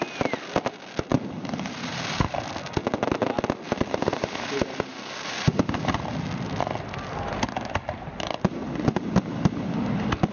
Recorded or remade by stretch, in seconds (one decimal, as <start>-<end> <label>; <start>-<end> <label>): 0.0-10.3 recorded